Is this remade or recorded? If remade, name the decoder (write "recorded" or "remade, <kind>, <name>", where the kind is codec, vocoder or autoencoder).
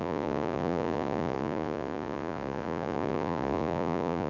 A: remade, vocoder, Vocos